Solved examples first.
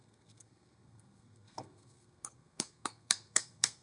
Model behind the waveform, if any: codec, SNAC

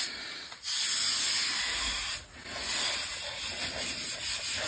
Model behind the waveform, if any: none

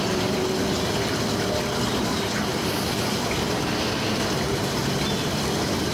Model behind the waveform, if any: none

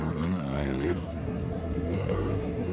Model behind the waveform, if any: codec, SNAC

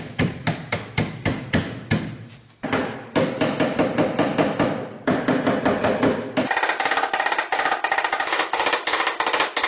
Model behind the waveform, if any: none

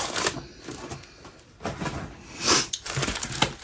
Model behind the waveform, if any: none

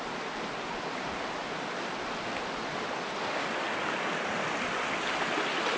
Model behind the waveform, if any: none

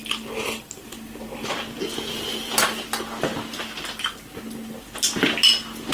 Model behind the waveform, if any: none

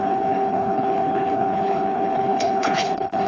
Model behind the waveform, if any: codec, HILCodec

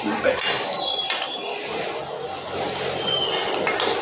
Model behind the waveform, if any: none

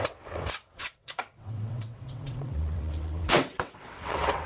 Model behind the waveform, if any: vocoder, WaveNeXt